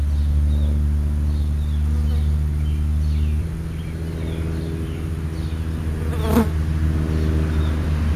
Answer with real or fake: real